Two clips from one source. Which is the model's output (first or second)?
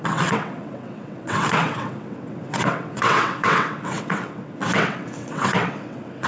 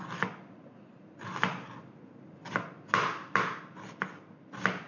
first